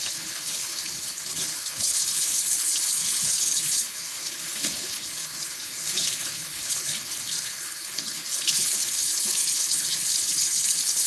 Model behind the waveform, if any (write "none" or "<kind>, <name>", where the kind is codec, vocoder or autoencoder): codec, HILCodec